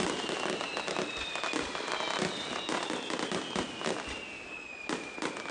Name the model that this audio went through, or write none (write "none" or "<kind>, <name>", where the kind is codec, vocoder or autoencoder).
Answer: none